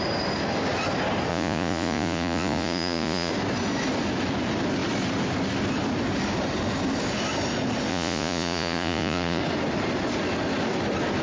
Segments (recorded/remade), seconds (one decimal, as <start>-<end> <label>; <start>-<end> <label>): 0.0-1.3 recorded; 1.3-3.3 remade; 3.3-7.9 recorded; 7.9-9.4 remade; 9.4-11.2 recorded